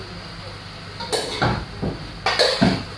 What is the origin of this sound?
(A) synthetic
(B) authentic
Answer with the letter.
B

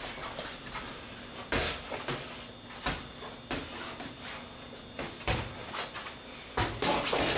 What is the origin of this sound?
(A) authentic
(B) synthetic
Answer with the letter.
A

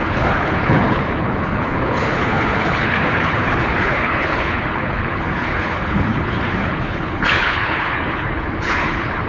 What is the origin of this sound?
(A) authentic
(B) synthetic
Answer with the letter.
B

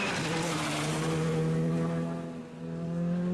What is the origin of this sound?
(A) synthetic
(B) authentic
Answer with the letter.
B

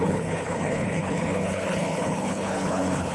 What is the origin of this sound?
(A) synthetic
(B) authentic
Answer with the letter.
A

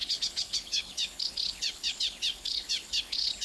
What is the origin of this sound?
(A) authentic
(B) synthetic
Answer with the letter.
B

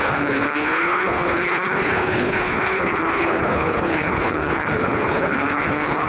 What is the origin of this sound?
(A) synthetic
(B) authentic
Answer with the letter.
A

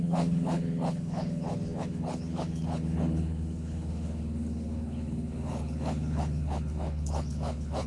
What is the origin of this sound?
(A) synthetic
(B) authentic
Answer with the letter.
A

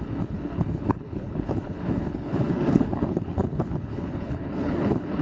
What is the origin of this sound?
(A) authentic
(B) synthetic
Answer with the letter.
B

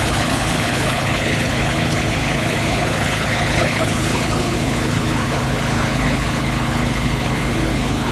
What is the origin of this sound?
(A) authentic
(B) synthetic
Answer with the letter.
B